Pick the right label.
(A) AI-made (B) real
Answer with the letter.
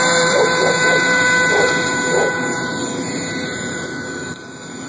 A